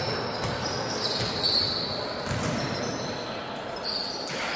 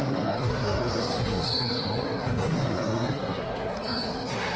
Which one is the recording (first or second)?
first